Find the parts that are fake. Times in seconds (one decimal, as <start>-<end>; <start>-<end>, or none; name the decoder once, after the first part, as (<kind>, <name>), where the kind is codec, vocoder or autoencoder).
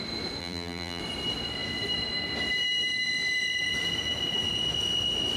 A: 0.4-1.0 (vocoder, BigVGAN v2)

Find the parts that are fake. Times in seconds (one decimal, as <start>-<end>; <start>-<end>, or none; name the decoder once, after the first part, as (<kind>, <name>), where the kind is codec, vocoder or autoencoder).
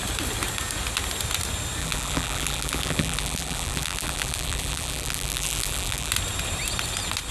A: 1.8-6.1 (vocoder, BigVGAN v2)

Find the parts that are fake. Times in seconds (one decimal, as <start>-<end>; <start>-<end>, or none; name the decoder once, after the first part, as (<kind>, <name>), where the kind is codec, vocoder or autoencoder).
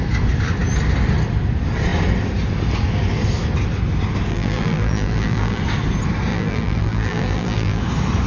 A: 4.3-5.6 (vocoder, BigVGAN v2); 6.3-7.8